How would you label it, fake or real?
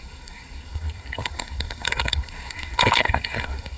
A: fake